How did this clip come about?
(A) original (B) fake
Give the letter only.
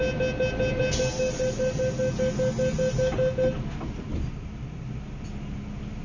A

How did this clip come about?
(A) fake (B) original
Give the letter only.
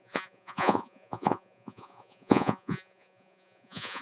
A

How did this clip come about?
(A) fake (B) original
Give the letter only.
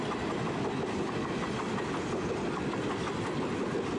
B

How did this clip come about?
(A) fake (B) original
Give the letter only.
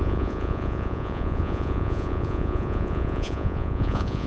A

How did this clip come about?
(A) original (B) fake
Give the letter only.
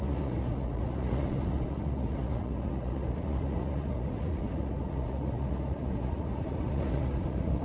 B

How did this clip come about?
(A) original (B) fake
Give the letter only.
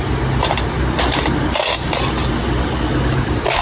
A